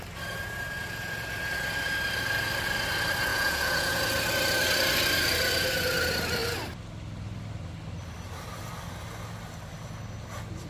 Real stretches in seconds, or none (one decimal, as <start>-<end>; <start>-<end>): 0.0-3.3; 4.0-10.7